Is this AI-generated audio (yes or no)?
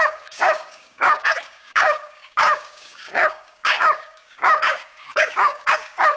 yes